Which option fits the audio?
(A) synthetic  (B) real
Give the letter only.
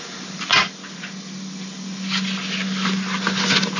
B